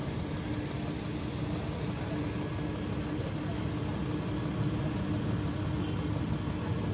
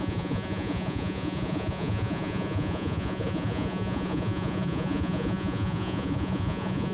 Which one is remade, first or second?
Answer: second